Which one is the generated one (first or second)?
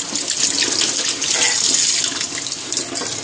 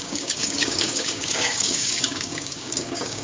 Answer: second